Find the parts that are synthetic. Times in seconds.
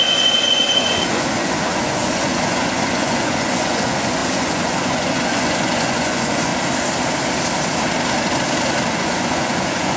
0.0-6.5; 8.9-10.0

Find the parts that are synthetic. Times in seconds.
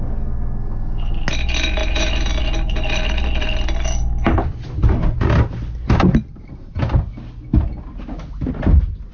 none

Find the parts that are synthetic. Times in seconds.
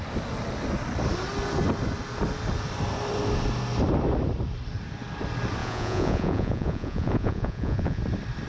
5.6-8.0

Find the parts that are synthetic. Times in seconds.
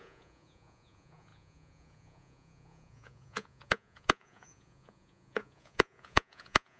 0.0-6.8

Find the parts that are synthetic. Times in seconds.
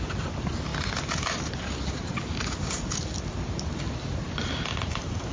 none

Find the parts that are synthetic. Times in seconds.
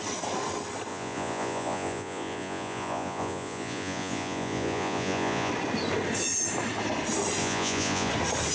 0.9-5.5; 7.4-8.1